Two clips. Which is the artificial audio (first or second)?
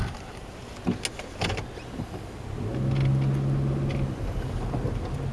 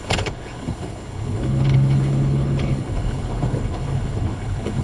second